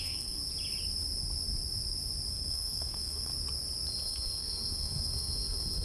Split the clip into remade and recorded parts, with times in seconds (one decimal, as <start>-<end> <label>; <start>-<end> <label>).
0.0-0.4 remade; 0.4-2.3 recorded; 2.3-3.3 remade; 3.3-4.0 recorded; 4.0-5.8 remade